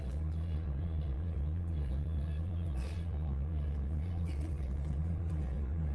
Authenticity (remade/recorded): remade